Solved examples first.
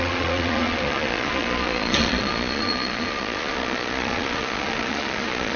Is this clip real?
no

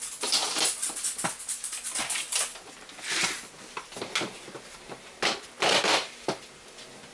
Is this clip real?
yes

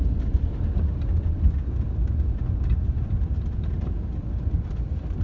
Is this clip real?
yes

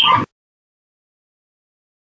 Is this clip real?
yes